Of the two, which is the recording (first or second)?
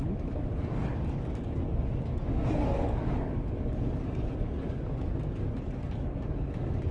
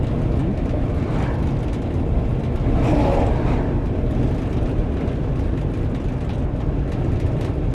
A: second